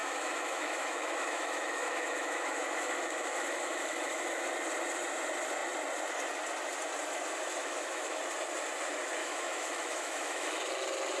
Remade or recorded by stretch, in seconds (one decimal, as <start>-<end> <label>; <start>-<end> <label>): 0.0-4.4 remade; 4.4-7.6 recorded; 7.6-8.2 remade; 8.2-9.2 recorded; 9.2-10.6 remade; 10.6-11.2 recorded